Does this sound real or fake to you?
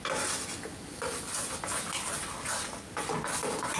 real